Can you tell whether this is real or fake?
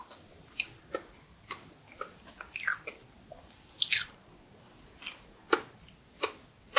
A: real